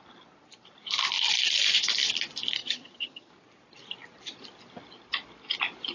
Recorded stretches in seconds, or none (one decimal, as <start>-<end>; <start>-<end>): 0.0-2.6; 3.3-5.9